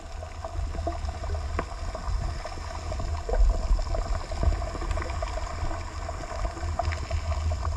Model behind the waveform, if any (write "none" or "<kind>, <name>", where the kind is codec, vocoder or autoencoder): none